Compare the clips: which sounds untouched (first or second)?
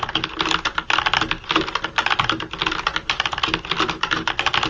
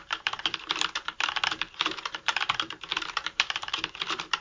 first